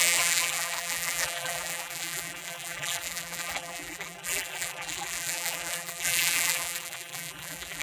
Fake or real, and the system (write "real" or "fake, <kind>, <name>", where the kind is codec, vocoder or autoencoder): fake, vocoder, BigVGAN v2